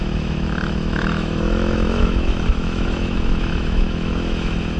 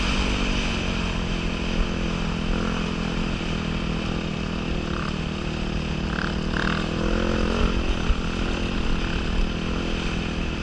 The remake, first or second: first